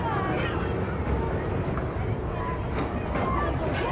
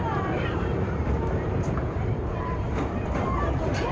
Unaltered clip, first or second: first